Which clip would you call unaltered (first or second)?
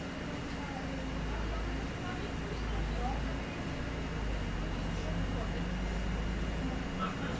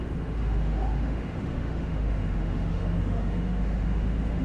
first